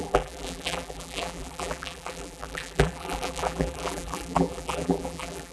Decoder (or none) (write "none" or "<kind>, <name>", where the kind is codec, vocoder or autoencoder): vocoder, BigVGAN v2